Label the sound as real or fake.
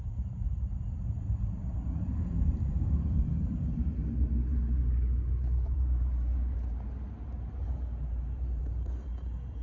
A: fake